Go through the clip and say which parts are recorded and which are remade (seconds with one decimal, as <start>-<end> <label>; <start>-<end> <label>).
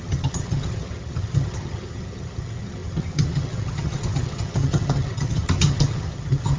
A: 0.0-6.6 remade